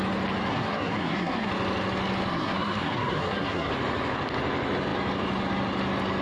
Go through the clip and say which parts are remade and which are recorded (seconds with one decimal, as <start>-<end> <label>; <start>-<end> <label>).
0.0-0.5 recorded; 0.5-1.5 remade; 1.5-2.3 recorded; 2.3-3.7 remade; 3.7-6.2 recorded